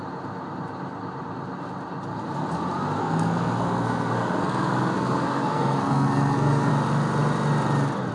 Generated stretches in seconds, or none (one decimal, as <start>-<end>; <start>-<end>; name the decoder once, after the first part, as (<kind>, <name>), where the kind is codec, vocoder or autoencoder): 3.0-6.7 (codec, SNAC)

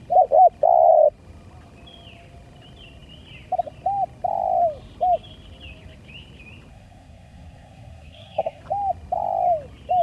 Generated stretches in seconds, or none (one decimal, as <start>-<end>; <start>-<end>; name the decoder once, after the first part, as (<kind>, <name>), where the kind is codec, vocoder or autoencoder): 6.7-8.6 (codec, SNAC)

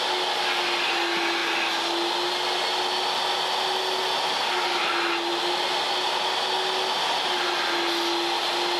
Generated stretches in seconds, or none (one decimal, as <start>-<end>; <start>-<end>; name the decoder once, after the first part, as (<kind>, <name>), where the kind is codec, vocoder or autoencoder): none

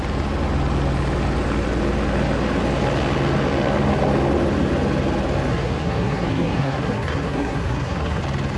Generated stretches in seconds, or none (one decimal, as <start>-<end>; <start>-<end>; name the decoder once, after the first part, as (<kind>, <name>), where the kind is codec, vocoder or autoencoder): 5.5-8.2 (codec, SNAC)